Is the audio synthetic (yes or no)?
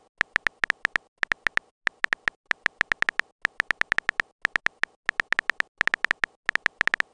no